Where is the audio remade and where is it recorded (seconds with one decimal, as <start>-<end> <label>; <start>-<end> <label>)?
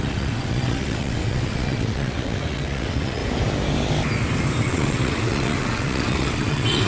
0.0-3.2 remade; 3.2-4.6 recorded; 4.6-6.9 remade